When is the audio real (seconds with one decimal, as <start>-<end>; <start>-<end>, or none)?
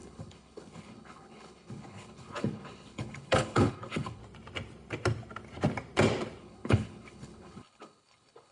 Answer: 4.2-6.4